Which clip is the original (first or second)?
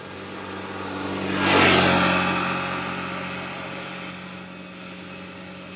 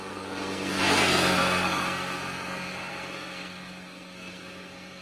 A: first